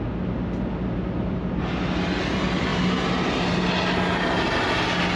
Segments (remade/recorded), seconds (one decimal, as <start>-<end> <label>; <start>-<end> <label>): 0.0-2.7 recorded; 2.7-3.7 remade; 3.7-5.2 recorded